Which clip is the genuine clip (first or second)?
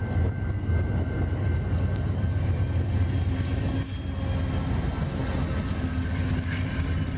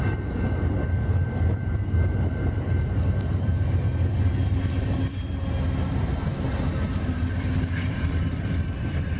first